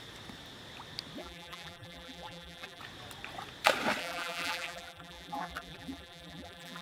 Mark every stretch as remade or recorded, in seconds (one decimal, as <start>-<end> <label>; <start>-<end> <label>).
0.0-1.2 recorded; 1.2-2.8 remade; 2.8-4.0 recorded; 4.0-6.8 remade